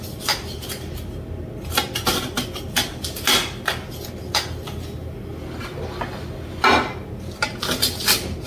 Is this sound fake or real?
real